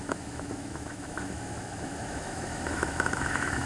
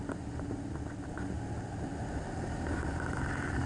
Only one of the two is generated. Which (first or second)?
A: first